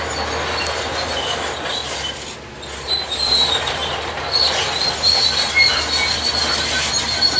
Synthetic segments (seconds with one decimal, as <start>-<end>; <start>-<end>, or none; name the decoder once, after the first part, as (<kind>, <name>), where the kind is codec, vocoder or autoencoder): none